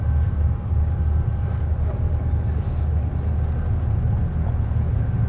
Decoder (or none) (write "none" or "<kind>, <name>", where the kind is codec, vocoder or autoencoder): none